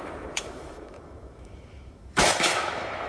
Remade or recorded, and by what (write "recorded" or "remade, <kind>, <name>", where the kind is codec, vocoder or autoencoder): remade, autoencoder, DAC-VAE